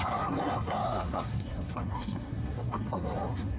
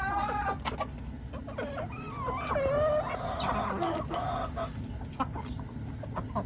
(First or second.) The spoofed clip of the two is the first